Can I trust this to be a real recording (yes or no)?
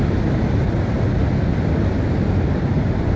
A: yes